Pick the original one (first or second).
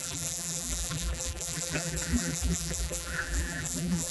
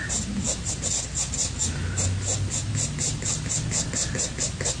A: second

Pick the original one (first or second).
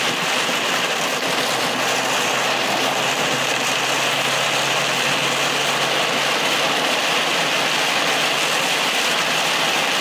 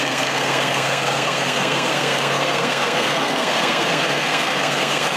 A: first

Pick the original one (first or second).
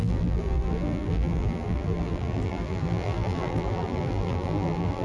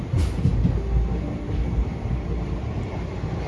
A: second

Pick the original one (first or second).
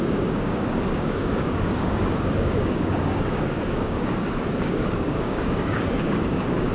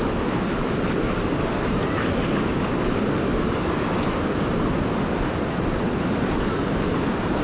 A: second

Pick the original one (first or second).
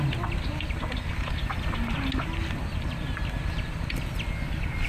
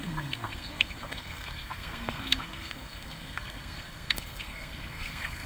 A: first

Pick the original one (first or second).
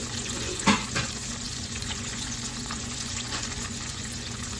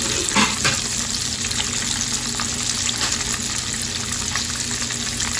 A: second